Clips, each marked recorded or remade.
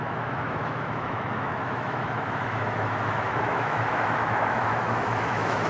remade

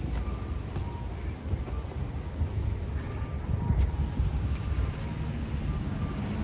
recorded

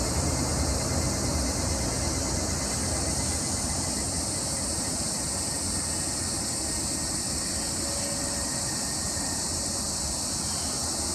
recorded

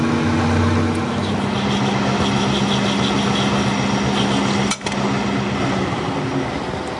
recorded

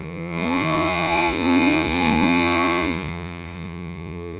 remade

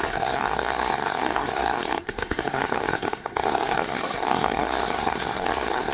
remade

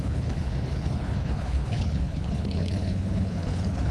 remade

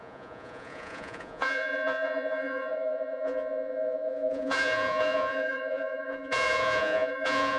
remade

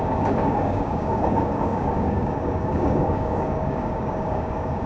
remade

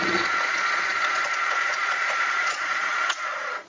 remade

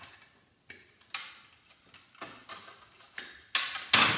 recorded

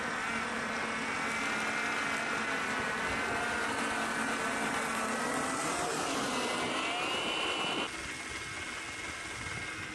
recorded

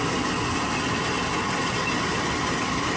recorded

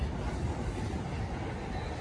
recorded